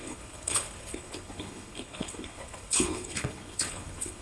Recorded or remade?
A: remade